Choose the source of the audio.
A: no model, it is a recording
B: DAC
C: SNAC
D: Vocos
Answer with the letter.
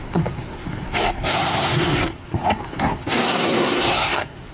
C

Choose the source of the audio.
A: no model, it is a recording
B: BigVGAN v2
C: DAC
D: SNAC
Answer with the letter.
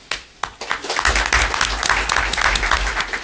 A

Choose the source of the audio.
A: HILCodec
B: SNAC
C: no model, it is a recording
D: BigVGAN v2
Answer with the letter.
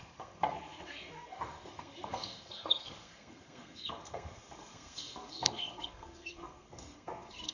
B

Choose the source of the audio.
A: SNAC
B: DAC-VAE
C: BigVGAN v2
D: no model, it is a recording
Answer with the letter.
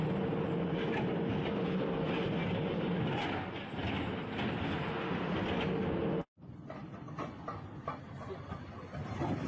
D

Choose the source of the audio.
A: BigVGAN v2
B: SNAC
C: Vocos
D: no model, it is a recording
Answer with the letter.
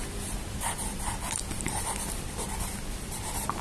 D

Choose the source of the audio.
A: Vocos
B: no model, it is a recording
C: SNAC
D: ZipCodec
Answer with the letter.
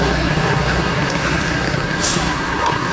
C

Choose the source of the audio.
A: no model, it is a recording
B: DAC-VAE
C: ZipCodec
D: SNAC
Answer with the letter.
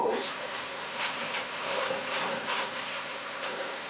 D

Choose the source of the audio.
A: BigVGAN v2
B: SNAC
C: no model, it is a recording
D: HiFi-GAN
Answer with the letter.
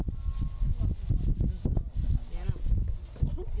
C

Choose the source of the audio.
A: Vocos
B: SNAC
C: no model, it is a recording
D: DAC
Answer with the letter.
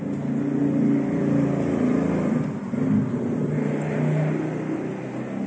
C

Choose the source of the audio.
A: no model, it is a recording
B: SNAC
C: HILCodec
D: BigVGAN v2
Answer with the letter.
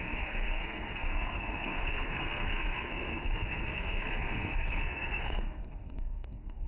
B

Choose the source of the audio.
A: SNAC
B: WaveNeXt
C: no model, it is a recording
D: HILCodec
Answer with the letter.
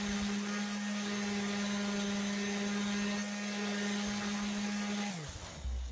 C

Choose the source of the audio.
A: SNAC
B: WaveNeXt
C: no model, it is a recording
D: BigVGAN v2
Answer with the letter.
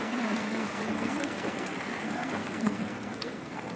A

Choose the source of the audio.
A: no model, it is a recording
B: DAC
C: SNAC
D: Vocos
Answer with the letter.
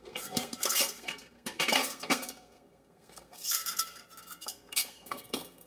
C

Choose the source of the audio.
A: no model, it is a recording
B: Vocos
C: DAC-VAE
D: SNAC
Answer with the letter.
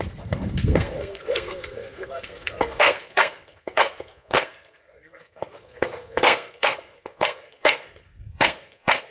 D